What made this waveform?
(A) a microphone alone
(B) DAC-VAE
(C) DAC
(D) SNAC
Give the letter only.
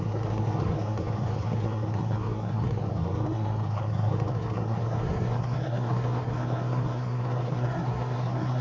D